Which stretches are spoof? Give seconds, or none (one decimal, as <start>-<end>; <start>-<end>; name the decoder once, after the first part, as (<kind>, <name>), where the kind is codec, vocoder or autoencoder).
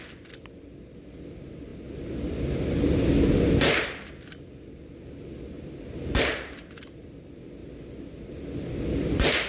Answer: none